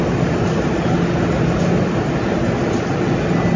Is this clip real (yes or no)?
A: yes